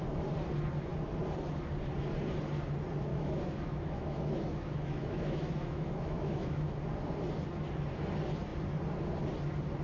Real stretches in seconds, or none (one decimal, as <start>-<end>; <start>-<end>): 0.0-3.1; 6.7-9.8